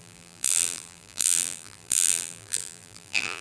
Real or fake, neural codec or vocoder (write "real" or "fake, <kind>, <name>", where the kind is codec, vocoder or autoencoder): fake, vocoder, BigVGAN v2